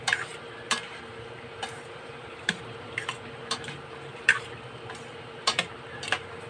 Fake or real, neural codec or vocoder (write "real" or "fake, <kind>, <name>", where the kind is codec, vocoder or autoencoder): fake, vocoder, BigVGAN v2